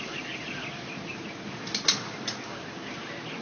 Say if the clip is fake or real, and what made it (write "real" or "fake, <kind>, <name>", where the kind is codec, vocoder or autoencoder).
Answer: real